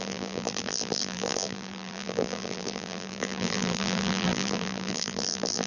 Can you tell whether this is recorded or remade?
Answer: remade